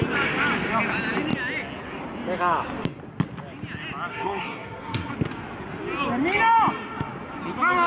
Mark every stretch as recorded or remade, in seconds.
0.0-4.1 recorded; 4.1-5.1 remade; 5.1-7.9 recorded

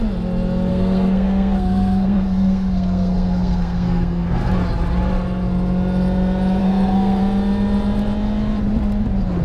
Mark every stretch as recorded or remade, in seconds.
0.0-0.7 recorded; 0.7-4.5 remade; 4.5-6.6 recorded; 6.6-7.2 remade; 7.2-9.4 recorded

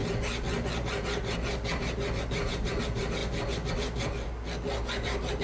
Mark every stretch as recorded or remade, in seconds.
0.0-5.4 recorded

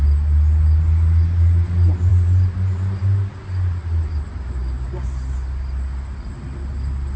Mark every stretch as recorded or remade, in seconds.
0.0-7.2 recorded

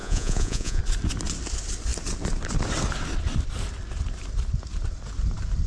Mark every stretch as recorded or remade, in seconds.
0.0-0.8 remade; 0.8-5.7 recorded

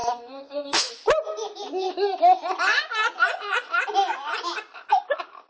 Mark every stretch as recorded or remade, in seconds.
0.0-0.9 remade; 0.9-5.5 recorded